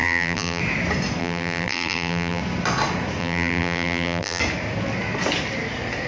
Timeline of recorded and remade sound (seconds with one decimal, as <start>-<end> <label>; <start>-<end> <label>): 0.0-0.6 remade; 0.6-1.2 recorded; 1.2-2.4 remade; 2.4-3.2 recorded; 3.2-4.4 remade; 4.4-6.1 recorded

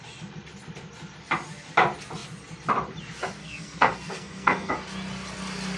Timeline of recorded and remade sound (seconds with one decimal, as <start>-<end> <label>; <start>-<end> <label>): 0.0-3.4 recorded; 3.4-4.7 remade; 4.7-5.8 recorded

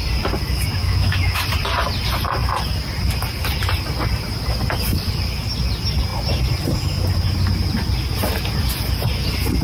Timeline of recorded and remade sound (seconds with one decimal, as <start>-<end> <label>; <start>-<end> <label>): 0.0-0.8 recorded; 0.8-1.4 remade; 1.4-9.6 recorded

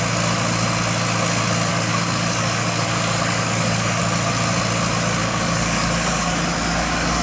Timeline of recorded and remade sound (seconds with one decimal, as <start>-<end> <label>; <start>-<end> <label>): 0.0-1.7 recorded; 1.7-4.0 remade; 4.0-5.2 recorded; 5.2-7.2 remade

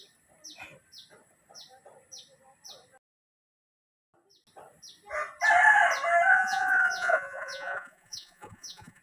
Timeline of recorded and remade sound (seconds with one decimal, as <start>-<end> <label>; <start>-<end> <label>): 0.0-6.3 recorded; 6.3-9.0 remade